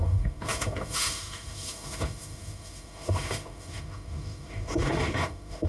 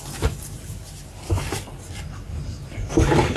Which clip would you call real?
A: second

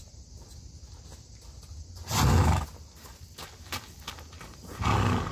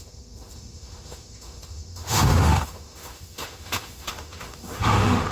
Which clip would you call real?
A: first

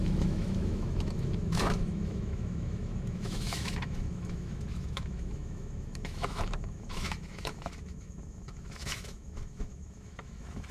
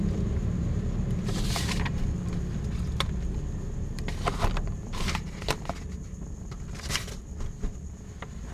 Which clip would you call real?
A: second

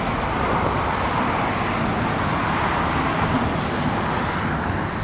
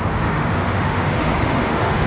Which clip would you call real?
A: first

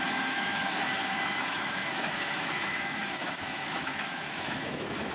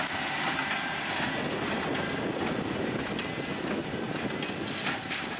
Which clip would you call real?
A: second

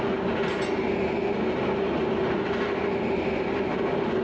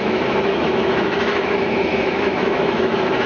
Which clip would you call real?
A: first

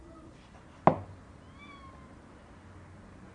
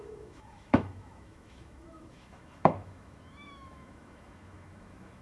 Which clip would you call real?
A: first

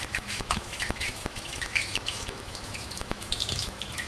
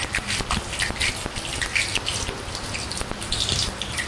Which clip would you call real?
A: second